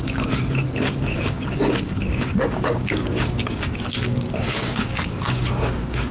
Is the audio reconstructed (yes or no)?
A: yes